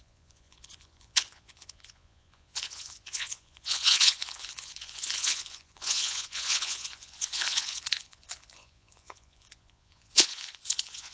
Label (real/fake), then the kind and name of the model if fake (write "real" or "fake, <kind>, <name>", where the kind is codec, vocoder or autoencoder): fake, vocoder, Vocos